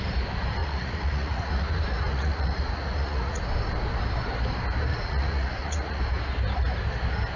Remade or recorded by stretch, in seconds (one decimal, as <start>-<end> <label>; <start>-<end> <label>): 0.0-0.6 recorded; 0.6-3.4 remade; 3.4-4.9 recorded; 4.9-6.0 remade; 6.0-7.4 recorded